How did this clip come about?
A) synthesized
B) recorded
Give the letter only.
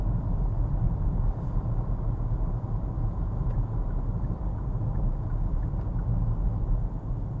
B